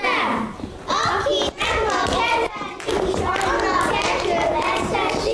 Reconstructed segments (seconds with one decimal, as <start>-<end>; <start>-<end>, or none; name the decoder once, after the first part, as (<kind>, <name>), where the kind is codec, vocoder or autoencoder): none